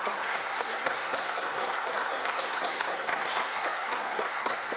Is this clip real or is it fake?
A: fake